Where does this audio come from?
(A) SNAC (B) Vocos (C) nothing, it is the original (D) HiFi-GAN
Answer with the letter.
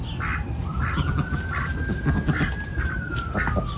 C